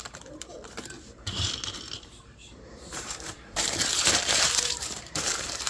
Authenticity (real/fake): fake